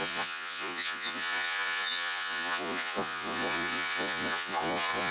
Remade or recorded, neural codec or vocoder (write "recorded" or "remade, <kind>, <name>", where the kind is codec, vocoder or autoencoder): remade, vocoder, Vocos